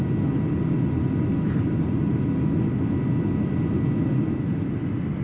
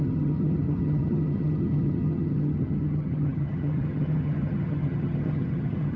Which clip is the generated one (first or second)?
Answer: second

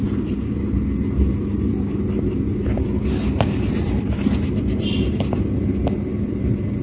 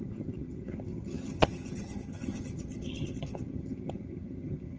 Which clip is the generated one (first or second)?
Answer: second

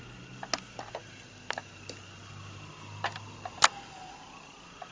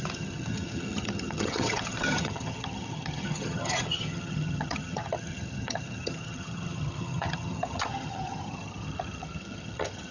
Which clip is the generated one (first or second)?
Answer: second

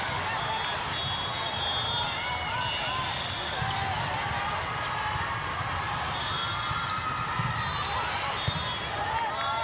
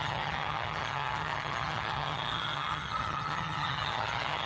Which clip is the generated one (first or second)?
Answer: second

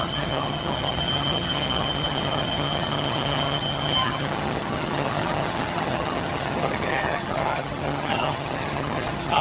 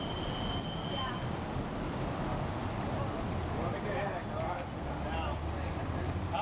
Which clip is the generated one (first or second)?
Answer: first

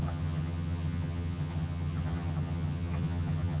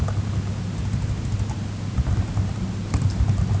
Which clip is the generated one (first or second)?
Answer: first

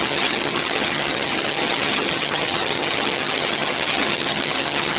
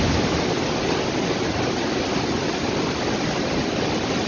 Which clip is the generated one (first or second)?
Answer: first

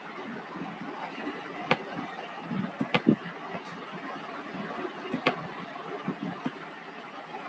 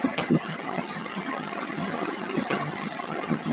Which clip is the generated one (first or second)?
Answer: second